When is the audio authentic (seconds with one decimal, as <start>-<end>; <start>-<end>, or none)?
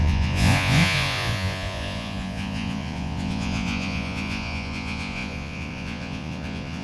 none